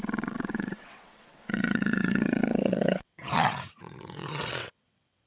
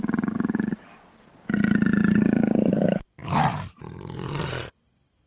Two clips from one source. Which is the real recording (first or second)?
second